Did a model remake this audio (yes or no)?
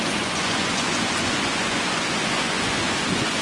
yes